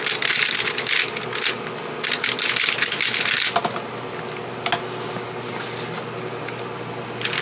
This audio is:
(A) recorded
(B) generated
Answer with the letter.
A